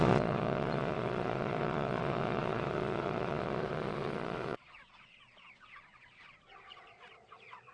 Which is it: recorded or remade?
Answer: remade